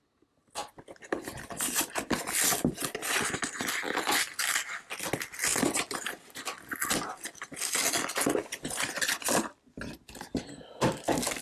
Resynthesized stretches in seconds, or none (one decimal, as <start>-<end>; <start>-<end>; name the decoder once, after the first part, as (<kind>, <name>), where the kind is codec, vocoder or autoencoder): none